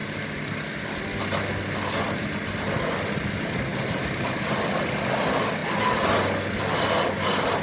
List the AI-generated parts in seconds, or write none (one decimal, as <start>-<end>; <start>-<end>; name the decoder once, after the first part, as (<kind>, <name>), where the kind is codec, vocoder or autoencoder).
none